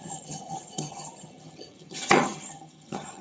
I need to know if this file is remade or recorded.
remade